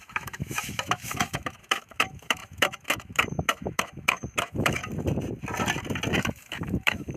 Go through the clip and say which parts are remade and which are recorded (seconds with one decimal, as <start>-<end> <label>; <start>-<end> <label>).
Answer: 0.0-4.8 remade; 4.8-6.1 recorded; 6.1-7.2 remade